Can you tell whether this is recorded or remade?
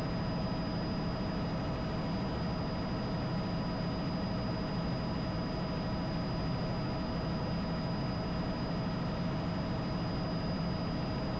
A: recorded